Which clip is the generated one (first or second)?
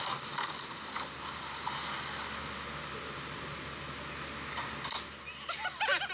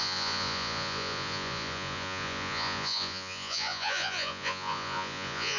second